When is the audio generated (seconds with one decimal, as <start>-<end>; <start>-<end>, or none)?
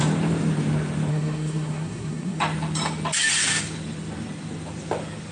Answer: 1.1-2.4